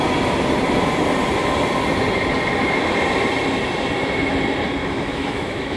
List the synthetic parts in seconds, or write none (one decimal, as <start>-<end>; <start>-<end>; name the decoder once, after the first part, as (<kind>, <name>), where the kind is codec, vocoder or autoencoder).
4.8-5.8 (autoencoder, DAC-VAE)

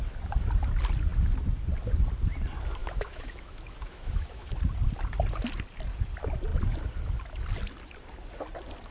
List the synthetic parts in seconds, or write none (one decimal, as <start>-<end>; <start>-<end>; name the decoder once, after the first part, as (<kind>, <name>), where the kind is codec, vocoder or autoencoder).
2.8-4.5 (autoencoder, DAC-VAE)

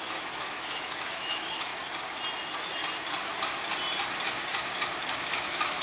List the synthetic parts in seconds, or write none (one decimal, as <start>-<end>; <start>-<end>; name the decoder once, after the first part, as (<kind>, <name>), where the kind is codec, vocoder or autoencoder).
0.0-1.7 (autoencoder, DAC-VAE); 5.2-5.8

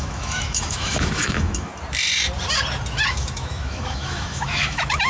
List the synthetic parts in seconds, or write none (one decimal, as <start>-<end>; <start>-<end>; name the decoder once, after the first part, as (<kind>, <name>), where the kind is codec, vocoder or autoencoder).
0.0-1.7 (autoencoder, DAC-VAE); 3.1-5.1